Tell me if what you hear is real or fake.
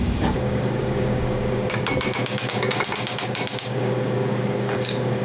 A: fake